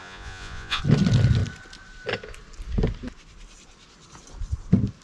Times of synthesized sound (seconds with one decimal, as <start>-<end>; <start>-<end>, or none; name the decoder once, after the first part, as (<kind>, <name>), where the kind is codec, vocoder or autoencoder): 0.0-0.8 (vocoder, Vocos)